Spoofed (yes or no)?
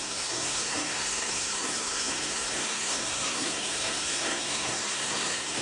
yes